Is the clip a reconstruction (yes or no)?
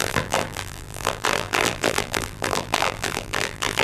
yes